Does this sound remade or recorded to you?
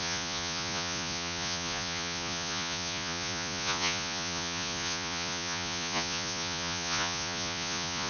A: remade